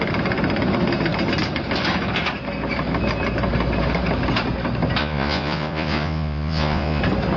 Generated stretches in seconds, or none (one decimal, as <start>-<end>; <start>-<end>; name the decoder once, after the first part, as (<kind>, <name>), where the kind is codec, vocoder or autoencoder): 5.0-7.0 (vocoder, Vocos)

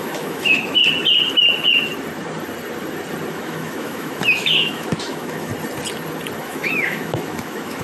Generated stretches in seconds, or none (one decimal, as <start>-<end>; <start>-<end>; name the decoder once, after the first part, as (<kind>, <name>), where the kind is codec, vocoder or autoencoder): 0.0-0.8 (autoencoder, DAC-VAE); 3.3-5.5; 6.4-7.8

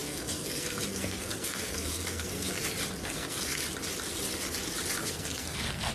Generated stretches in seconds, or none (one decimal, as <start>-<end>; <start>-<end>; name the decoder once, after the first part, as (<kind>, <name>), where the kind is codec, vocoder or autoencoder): 0.0-2.6 (codec, SNAC); 3.0-3.6; 5.0-5.9

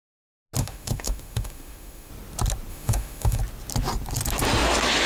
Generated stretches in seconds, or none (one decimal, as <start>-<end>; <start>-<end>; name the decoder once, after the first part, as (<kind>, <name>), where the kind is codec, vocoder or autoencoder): 0.6-2.1 (autoencoder, DAC-VAE); 2.7-3.4

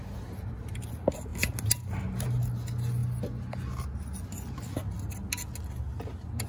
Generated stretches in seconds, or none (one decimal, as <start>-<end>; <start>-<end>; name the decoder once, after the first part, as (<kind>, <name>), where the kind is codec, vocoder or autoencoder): none

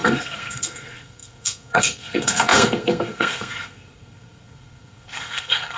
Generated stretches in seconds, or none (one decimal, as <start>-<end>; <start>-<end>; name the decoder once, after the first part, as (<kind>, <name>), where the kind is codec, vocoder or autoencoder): 0.0-5.8 (codec, SNAC)

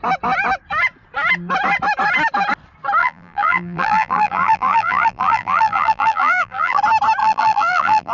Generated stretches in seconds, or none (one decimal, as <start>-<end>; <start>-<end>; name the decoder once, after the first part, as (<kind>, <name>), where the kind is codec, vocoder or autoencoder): 3.0-6.8 (vocoder, BigVGAN v2); 7.2-8.1